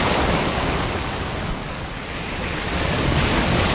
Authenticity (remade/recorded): remade